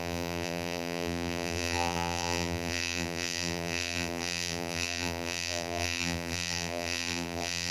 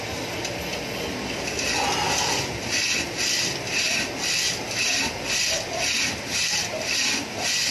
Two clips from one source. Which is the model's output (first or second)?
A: first